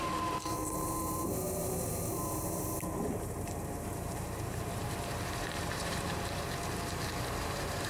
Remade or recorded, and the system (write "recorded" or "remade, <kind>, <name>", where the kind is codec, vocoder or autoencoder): remade, vocoder, BigVGAN v2